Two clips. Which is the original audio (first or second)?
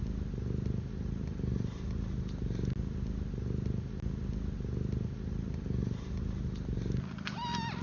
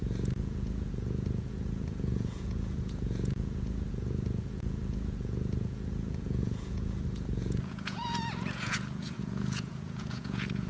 first